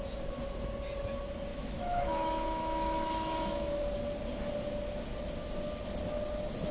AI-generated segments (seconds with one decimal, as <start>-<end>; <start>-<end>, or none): 1.5-3.8